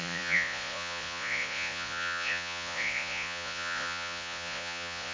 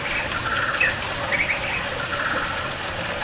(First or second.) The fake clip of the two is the first